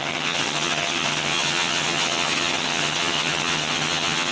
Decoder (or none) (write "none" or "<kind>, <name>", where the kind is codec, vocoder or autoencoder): vocoder, HiFi-GAN